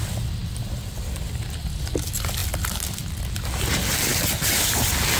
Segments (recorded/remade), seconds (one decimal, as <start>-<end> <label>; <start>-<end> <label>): 0.0-5.2 recorded